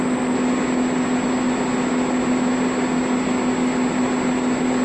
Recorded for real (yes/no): yes